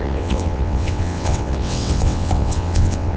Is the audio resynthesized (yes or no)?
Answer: yes